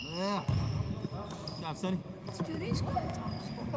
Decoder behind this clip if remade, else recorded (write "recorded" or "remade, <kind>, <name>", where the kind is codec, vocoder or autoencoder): recorded